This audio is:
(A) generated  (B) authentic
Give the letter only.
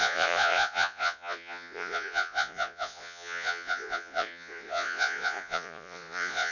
A